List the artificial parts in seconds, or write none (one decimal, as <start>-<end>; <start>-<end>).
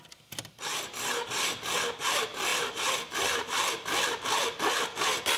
none